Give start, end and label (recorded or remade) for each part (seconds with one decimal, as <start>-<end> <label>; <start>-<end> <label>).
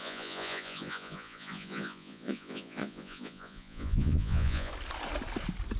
0.0-4.7 remade; 4.7-5.8 recorded